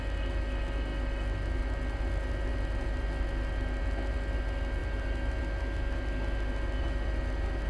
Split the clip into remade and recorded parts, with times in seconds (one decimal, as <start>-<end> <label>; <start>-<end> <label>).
0.0-7.7 recorded